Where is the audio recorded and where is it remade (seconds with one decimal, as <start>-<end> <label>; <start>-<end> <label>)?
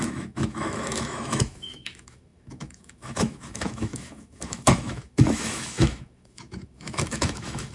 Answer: 0.0-7.7 remade